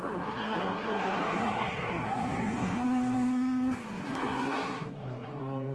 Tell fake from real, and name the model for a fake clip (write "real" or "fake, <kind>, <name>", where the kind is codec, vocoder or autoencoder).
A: fake, codec, SNAC